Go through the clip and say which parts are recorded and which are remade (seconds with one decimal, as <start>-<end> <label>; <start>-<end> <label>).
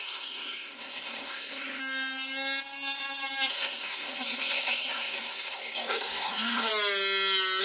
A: 0.0-1.8 remade; 1.8-3.5 recorded; 3.5-6.7 remade; 6.7-7.6 recorded